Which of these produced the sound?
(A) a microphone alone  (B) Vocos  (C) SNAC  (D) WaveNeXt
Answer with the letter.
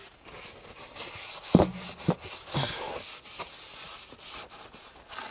A